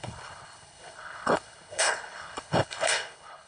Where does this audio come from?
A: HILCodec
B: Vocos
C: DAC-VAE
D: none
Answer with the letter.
A